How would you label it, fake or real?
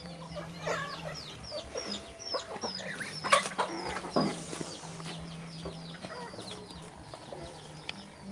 real